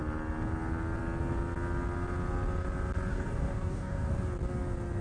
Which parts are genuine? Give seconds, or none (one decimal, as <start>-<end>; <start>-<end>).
0.0-3.1; 4.1-5.0